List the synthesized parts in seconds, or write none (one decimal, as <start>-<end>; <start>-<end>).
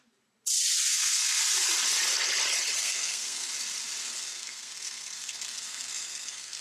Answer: 0.9-1.4; 2.8-3.5; 4.0-6.6